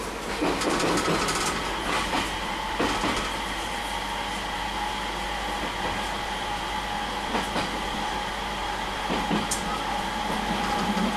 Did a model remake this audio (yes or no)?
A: no